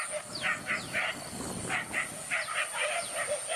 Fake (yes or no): no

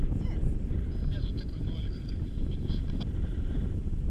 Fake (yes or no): no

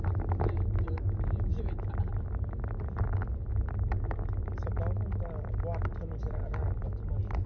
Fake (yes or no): no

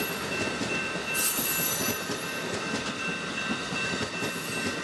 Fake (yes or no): no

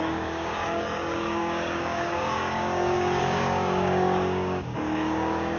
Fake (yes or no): yes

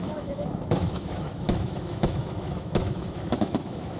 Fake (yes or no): yes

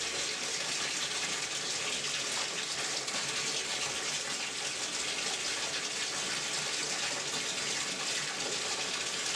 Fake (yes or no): no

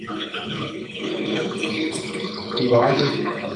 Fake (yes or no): yes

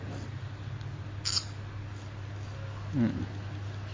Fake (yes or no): no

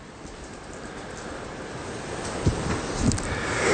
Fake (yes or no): no